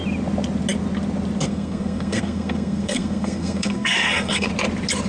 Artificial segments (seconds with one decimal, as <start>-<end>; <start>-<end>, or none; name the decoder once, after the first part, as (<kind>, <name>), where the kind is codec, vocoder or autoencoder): 1.4-4.5 (codec, SNAC)

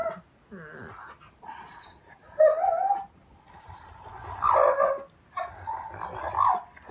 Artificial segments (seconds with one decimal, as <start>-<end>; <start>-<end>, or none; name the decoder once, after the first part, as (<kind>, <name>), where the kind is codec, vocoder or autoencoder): none

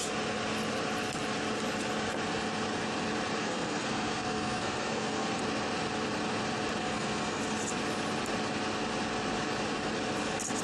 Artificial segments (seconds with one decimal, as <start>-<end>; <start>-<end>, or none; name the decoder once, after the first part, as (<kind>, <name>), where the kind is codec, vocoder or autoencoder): 3.4-5.4 (codec, SNAC); 6.8-7.4